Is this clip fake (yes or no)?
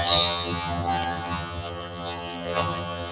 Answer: yes